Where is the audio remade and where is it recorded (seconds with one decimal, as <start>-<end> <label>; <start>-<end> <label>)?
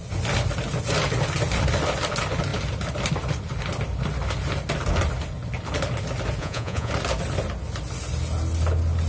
0.0-6.4 recorded; 6.4-6.9 remade; 6.9-9.1 recorded